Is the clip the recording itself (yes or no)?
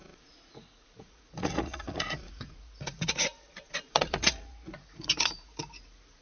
no